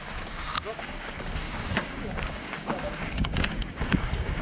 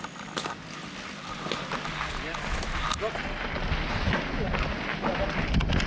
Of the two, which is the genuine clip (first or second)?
second